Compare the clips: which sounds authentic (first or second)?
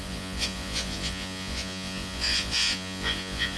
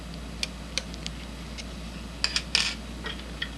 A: second